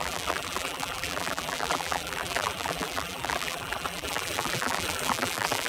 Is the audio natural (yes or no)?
no